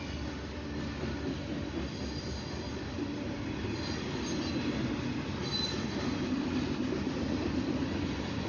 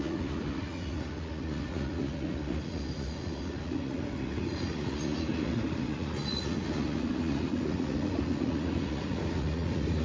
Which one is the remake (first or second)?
second